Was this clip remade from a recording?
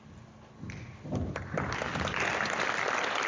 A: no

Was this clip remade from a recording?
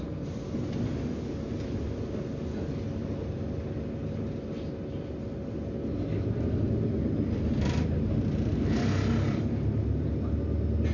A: no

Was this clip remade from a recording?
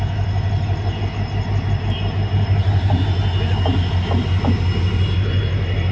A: no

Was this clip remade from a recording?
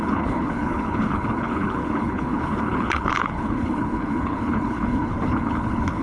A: yes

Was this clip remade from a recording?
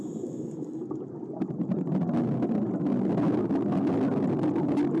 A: no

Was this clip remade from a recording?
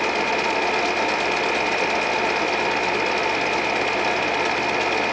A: no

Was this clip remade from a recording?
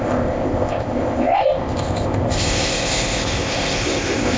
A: yes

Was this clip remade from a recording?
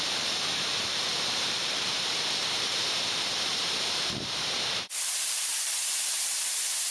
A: yes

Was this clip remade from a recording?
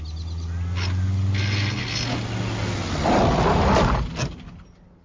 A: no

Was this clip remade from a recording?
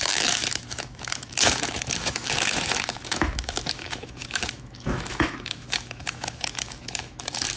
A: yes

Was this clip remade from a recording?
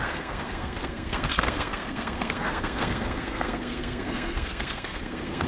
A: yes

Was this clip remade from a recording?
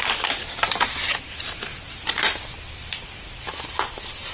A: yes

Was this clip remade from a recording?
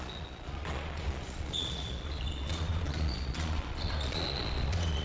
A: yes